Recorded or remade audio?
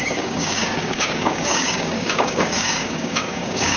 remade